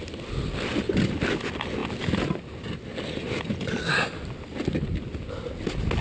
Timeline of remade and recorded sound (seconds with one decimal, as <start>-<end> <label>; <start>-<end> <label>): 0.0-6.0 recorded